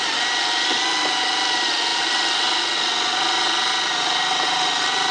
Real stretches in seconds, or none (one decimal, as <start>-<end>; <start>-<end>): 0.0-5.1